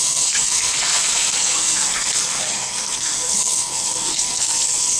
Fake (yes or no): yes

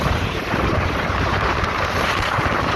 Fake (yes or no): yes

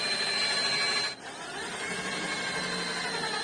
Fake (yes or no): no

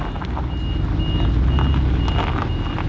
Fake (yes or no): no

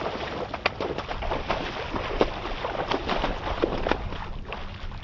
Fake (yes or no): no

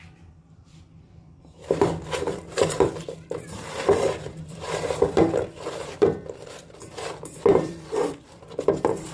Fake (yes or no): yes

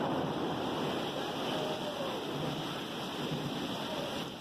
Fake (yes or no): yes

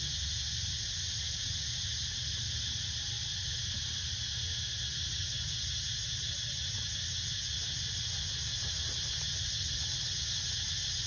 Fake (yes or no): no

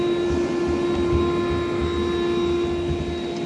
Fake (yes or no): no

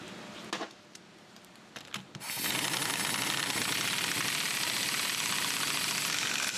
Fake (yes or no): no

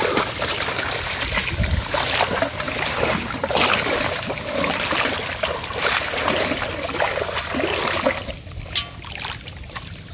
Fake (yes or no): no